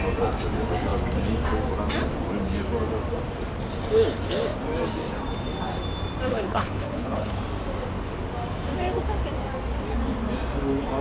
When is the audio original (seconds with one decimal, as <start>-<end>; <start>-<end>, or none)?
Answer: 0.0-6.3; 7.4-11.0